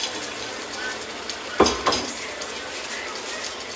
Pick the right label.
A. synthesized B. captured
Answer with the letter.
B